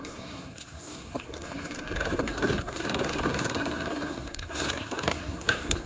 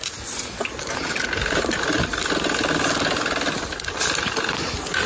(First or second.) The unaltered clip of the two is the second